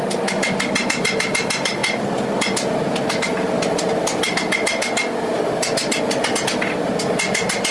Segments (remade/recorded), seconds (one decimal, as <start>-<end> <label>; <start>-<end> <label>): 0.0-7.7 recorded